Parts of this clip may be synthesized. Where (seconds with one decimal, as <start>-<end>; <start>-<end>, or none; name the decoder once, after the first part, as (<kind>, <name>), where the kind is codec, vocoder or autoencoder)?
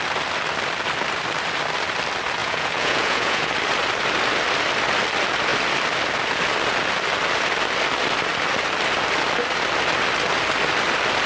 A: 2.4-3.5 (vocoder, Vocos)